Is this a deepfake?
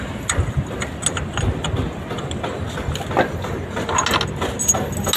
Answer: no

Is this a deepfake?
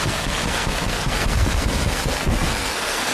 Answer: yes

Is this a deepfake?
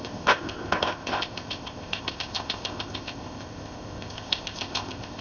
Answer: yes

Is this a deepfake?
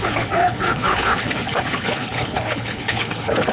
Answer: yes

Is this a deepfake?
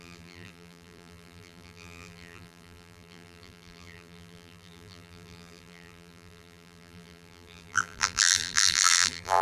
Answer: yes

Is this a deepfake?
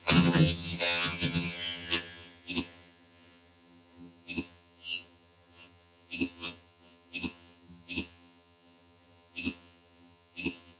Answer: yes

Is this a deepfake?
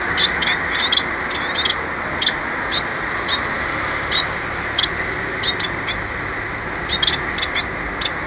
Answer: no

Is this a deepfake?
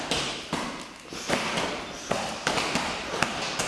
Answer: no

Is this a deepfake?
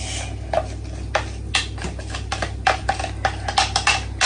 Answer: no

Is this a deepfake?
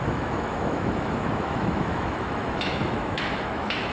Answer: yes